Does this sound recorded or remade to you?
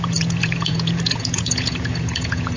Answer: remade